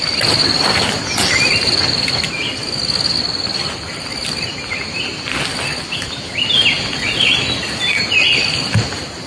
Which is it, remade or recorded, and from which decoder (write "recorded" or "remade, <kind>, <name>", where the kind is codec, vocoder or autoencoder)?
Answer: recorded